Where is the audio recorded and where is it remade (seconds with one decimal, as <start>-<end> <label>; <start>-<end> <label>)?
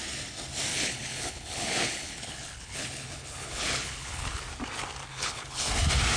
0.0-0.7 recorded; 0.7-4.4 remade; 4.4-5.1 recorded; 5.1-5.7 remade; 5.7-6.2 recorded